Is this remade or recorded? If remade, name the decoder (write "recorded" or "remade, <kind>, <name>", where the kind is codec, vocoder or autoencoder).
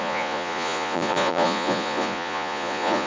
remade, vocoder, Vocos